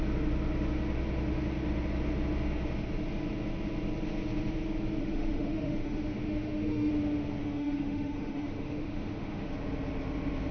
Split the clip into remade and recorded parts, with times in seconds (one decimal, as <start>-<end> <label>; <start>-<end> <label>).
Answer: 0.0-5.0 recorded; 5.0-6.9 remade; 6.9-7.4 recorded; 7.4-9.5 remade; 9.5-10.5 recorded